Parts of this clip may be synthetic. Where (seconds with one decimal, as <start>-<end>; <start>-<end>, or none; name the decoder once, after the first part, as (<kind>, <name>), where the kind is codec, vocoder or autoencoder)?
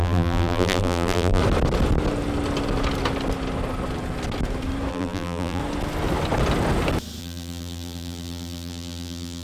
0.0-1.4 (vocoder, BigVGAN v2); 4.9-5.6; 7.2-9.4